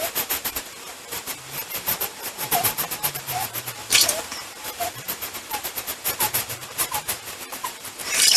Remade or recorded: remade